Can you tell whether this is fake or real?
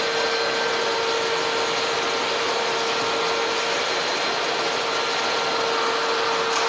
real